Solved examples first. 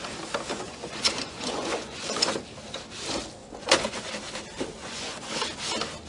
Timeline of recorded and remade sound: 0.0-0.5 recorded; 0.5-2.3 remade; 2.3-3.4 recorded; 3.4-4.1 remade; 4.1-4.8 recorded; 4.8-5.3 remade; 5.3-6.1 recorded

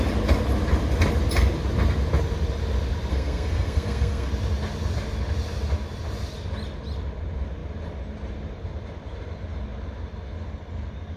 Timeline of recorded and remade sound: 0.0-3.1 recorded; 3.1-4.3 remade; 4.3-11.2 recorded